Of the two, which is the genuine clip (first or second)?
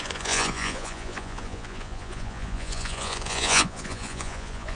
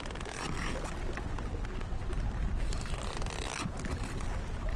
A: second